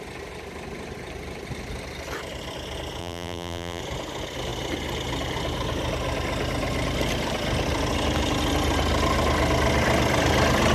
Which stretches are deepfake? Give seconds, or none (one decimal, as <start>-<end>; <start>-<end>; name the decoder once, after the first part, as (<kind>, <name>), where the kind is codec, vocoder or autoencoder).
3.0-3.8 (vocoder, BigVGAN v2)

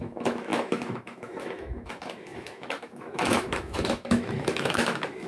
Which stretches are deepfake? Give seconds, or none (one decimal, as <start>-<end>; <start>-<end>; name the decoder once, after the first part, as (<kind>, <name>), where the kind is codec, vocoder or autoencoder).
0.0-5.3 (autoencoder, DAC-VAE)